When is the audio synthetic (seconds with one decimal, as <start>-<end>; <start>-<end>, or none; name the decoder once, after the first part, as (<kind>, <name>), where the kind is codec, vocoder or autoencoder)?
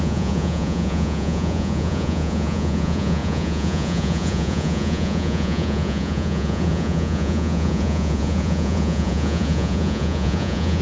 0.0-10.8 (vocoder, Vocos)